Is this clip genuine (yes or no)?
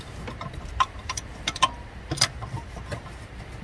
no